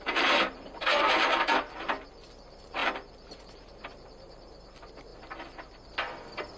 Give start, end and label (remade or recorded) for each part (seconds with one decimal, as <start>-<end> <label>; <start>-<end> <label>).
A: 0.0-5.1 remade; 5.1-6.6 recorded